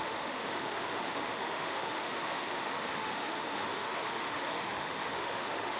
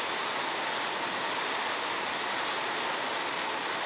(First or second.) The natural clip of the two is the second